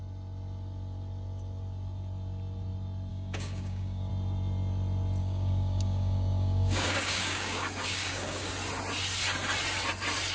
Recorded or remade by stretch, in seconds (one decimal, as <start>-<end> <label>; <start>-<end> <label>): 0.0-3.1 recorded; 3.1-4.1 remade; 4.1-5.2 recorded; 5.2-8.5 remade; 8.5-10.3 recorded